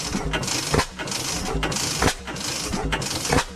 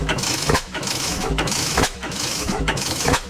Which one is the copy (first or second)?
second